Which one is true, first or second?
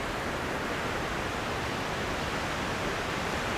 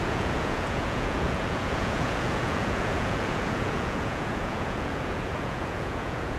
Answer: first